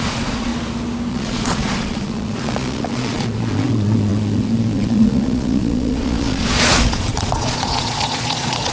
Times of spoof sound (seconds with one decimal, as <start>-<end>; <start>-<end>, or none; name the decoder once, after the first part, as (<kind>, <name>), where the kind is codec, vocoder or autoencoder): 0.0-0.5 (vocoder, Vocos); 1.1-8.7